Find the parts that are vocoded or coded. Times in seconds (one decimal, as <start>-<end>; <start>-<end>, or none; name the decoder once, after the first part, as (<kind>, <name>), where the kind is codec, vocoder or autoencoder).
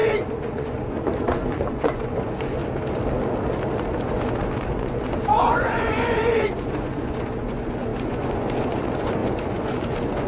0.0-2.6 (vocoder, Vocos); 4.0-10.3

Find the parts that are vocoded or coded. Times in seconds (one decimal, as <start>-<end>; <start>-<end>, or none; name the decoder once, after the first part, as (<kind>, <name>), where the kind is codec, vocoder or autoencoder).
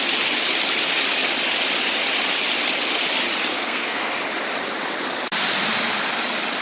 3.5-4.1 (codec, SNAC)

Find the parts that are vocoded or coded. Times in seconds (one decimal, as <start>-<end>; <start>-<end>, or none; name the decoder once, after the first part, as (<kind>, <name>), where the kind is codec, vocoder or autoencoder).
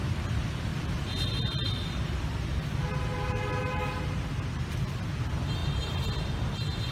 none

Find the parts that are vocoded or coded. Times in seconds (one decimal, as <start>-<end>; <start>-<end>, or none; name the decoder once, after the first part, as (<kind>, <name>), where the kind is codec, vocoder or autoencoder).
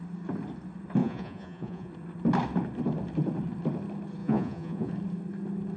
1.0-1.9 (vocoder, Vocos); 4.2-4.9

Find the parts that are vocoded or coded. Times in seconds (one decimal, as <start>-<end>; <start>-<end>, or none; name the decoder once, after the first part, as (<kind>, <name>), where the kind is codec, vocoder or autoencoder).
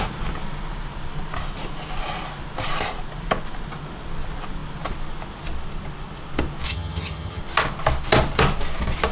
6.7-7.4 (vocoder, HiFi-GAN)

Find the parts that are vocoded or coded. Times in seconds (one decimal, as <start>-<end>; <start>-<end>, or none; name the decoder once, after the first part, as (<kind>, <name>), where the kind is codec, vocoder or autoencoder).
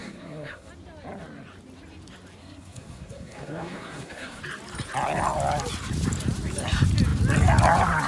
0.0-0.7 (codec, SNAC); 2.4-4.4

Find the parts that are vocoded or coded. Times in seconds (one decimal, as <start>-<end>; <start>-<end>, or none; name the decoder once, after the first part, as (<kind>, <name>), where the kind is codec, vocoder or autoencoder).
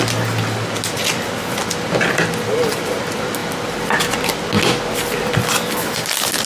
none